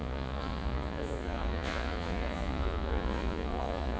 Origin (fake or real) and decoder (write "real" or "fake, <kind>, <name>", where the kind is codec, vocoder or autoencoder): fake, vocoder, Vocos